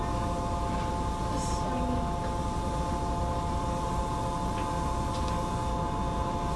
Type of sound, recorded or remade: recorded